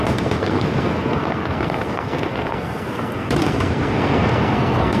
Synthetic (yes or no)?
yes